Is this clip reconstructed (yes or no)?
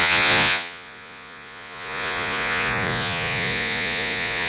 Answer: yes